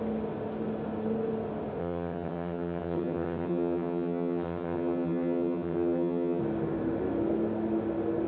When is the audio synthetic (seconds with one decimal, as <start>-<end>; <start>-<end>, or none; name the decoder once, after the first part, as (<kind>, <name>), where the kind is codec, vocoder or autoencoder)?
1.8-6.4 (vocoder, HiFi-GAN)